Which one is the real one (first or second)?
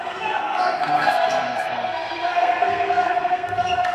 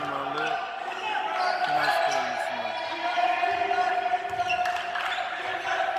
second